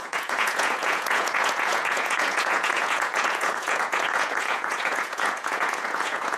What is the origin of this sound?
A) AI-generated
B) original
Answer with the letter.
A